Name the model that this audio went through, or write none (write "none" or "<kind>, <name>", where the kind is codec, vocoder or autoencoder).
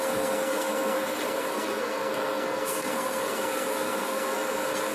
codec, SNAC